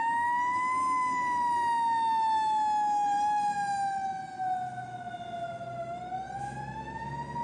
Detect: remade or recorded recorded